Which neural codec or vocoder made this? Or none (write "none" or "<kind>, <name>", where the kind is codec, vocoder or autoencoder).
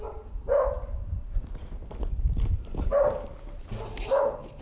none